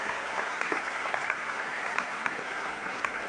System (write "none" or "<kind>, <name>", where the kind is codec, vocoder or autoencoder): codec, SNAC